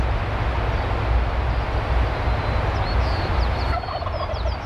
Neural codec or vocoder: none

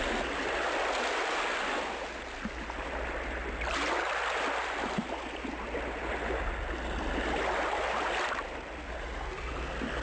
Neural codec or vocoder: none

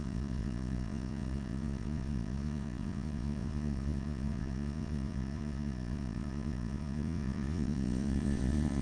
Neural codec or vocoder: vocoder, Vocos